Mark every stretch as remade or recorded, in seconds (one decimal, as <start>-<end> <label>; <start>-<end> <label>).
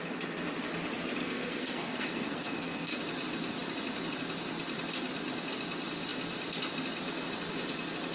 0.0-1.2 recorded; 1.2-3.0 remade; 3.0-8.1 recorded